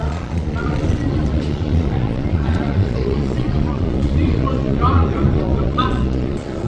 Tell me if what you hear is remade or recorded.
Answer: remade